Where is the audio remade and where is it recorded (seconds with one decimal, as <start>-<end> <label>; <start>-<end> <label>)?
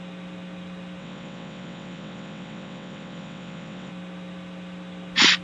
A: 0.0-1.0 recorded; 1.0-3.9 remade; 3.9-5.4 recorded